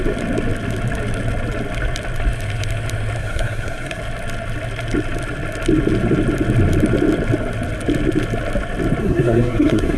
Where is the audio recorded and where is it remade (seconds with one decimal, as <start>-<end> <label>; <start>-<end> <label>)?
0.0-3.2 recorded; 3.2-4.0 remade; 4.0-9.0 recorded; 9.0-10.0 remade